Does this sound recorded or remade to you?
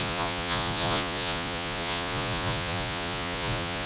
remade